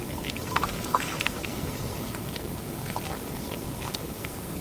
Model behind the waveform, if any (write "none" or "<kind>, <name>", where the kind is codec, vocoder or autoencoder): codec, SNAC